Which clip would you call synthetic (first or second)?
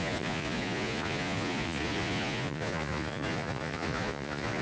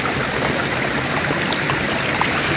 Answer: first